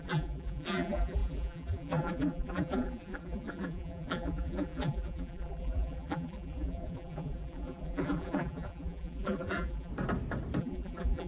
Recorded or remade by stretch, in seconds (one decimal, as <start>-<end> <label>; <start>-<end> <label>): 0.0-9.9 remade; 9.9-10.6 recorded; 10.6-11.3 remade